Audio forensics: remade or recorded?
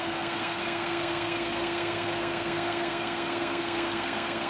remade